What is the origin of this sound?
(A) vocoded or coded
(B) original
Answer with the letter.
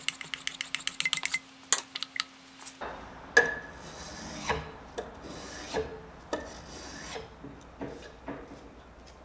B